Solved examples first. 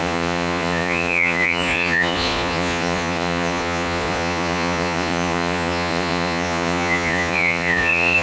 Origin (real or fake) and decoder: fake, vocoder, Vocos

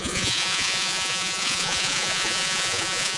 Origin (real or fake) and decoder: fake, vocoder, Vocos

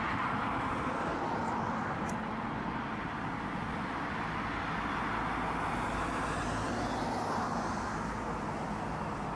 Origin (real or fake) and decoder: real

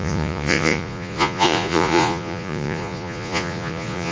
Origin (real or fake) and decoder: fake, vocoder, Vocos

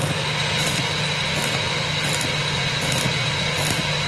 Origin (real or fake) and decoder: real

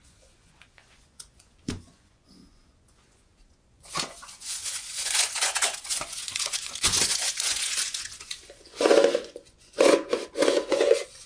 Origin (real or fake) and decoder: fake, vocoder, Vocos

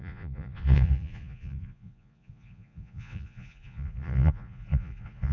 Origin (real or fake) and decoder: fake, vocoder, Vocos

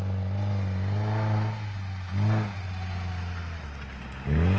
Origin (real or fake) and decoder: real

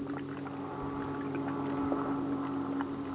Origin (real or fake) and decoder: real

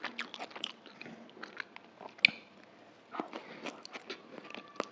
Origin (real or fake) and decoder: real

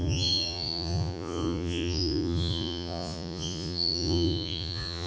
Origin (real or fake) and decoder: fake, vocoder, Vocos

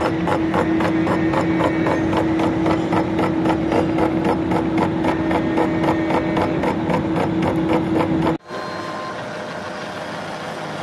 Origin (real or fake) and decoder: real